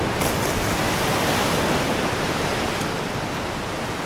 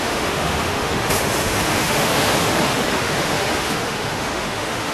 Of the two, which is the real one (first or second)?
first